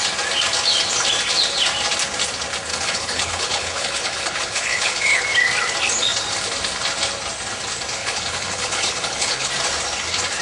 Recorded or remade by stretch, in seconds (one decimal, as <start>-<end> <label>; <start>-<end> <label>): 0.0-2.7 recorded; 2.7-5.2 remade; 5.2-8.0 recorded; 8.0-9.5 remade; 9.5-10.4 recorded